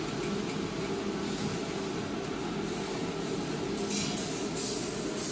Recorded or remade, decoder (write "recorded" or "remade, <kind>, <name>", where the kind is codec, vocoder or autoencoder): recorded